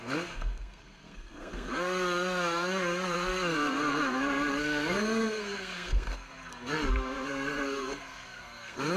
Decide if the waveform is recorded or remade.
remade